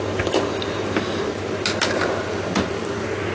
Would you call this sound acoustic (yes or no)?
yes